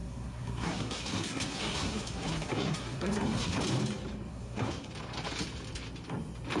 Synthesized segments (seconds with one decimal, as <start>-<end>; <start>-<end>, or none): 0.0-3.6; 4.3-4.9